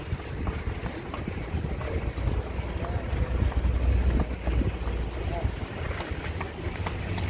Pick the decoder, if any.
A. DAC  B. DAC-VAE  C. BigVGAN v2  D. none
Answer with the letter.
D